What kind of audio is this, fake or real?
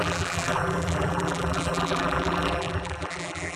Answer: fake